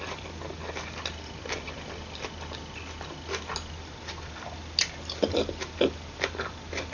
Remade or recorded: recorded